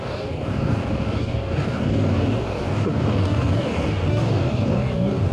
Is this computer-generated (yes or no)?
yes